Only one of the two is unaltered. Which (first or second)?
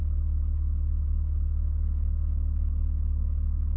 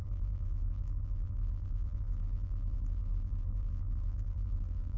first